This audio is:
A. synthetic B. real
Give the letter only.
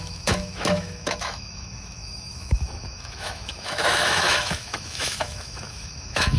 A